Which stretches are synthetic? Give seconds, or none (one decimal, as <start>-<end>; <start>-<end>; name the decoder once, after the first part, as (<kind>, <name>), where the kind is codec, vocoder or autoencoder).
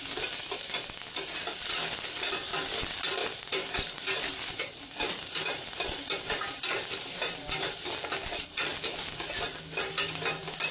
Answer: 3.2-7.9 (vocoder, BigVGAN v2)